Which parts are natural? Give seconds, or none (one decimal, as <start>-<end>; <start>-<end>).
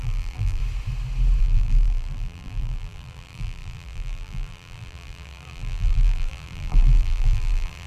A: 0.6-1.4